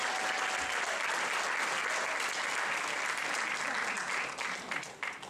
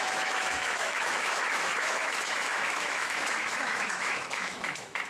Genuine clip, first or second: first